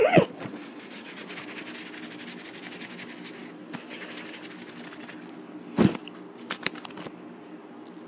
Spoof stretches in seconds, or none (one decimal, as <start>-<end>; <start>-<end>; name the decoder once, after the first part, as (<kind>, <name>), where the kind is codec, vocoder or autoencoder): 0.0-1.3 (vocoder, Vocos)